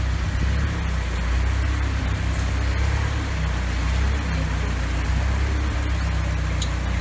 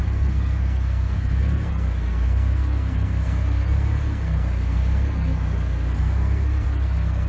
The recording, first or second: first